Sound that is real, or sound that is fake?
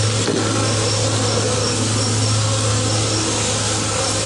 real